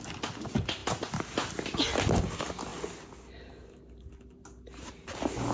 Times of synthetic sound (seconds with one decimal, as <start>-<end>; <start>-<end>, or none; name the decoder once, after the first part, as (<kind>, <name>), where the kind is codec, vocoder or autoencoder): none